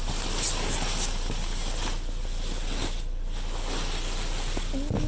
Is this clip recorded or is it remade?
recorded